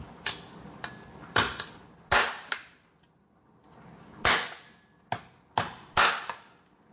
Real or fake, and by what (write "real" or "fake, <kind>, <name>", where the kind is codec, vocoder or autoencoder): real